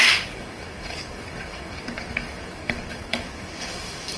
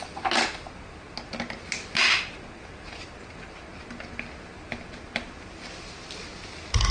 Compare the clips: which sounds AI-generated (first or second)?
first